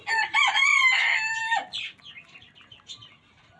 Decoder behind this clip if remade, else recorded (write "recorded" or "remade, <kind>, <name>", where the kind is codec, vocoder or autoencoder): remade, vocoder, BigVGAN v2